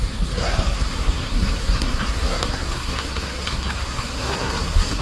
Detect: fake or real fake